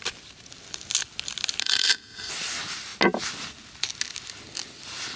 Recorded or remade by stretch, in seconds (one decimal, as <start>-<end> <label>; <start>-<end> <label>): 0.0-1.6 recorded; 1.6-2.3 remade; 2.3-5.2 recorded